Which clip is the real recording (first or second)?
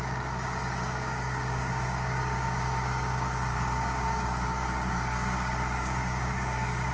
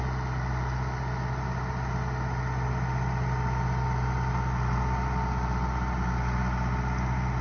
second